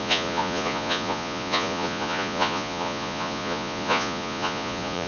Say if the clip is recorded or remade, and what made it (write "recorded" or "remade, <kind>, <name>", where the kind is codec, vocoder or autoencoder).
remade, vocoder, Vocos